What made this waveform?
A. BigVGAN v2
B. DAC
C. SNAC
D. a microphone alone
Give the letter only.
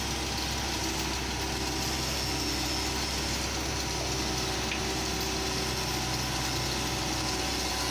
D